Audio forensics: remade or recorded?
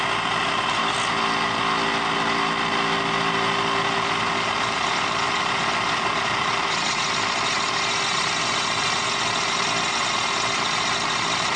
recorded